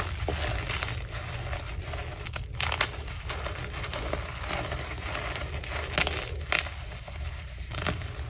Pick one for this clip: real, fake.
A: real